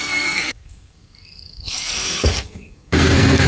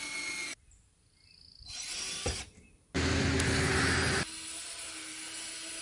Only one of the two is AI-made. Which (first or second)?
first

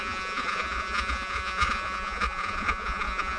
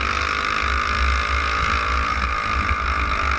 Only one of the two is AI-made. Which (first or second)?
first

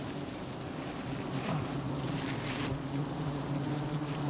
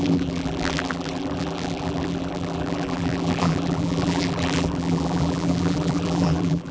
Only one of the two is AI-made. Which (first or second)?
second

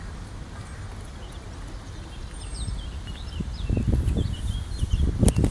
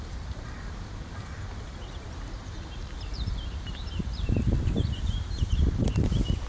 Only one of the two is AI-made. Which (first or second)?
second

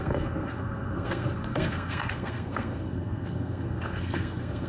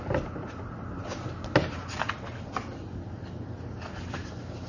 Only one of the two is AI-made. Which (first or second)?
first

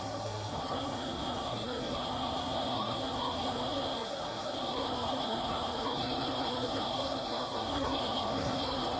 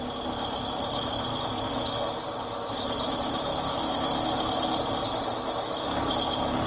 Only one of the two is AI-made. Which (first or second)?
first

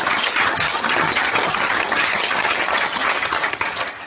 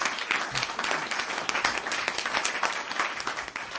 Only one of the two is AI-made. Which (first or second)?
first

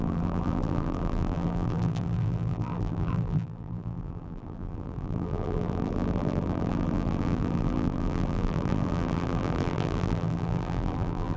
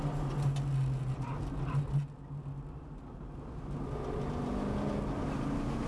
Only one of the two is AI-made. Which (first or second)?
first